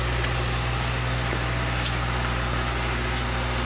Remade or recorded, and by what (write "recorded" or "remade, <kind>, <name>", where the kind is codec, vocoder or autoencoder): recorded